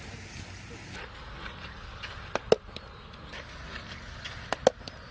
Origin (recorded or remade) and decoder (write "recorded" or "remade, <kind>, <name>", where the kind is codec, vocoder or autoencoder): recorded